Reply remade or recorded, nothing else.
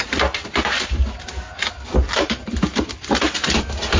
recorded